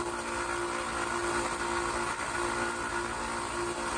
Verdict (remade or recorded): recorded